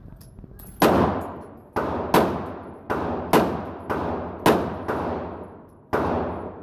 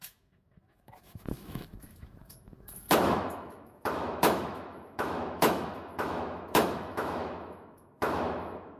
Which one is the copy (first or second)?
second